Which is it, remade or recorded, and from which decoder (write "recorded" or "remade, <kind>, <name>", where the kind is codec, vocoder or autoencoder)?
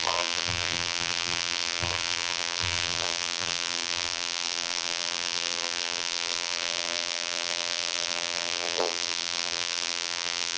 remade, vocoder, BigVGAN v2